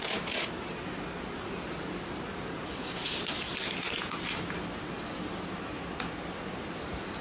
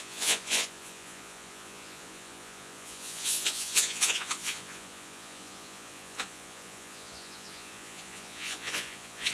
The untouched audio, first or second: first